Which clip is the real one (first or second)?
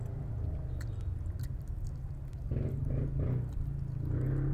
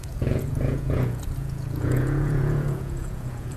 first